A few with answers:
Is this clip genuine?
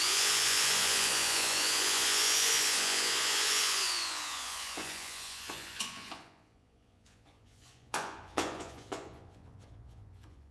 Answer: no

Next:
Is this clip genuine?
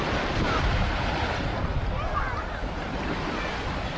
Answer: yes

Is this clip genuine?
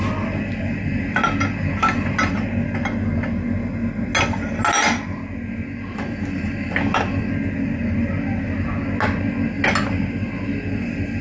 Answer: yes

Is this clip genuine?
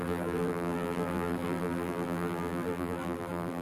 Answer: no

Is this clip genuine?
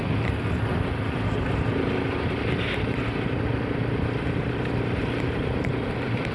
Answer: yes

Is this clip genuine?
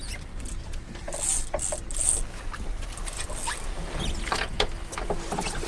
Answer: yes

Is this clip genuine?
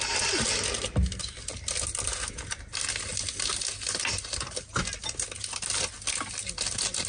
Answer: yes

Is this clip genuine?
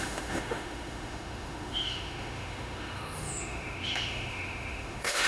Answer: no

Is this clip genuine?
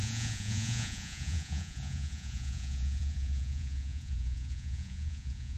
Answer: no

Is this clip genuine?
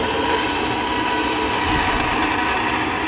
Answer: yes